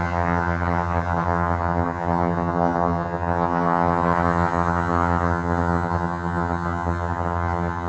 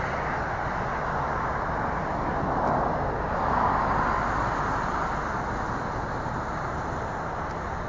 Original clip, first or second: second